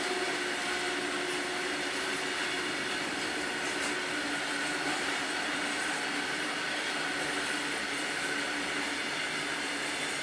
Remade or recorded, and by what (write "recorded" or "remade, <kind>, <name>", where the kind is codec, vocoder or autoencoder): recorded